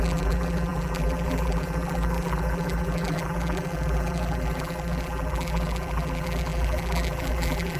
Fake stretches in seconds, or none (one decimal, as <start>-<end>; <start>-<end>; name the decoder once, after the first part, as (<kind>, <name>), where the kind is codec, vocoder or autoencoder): 0.0-7.8 (vocoder, BigVGAN v2)